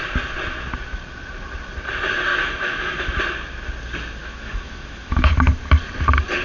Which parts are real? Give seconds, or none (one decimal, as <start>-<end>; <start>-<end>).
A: 0.0-2.3; 3.2-4.2; 5.3-6.4